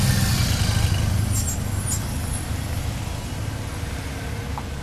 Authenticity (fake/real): real